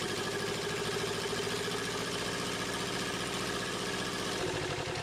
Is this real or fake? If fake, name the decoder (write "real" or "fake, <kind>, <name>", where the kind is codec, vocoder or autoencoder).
real